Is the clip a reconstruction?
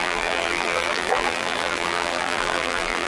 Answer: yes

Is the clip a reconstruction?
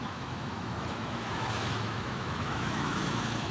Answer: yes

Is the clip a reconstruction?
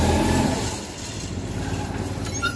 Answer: no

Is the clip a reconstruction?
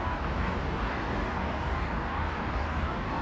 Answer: yes